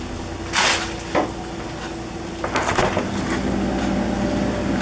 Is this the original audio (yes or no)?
yes